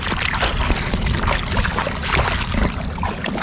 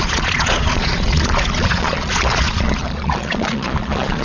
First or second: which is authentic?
first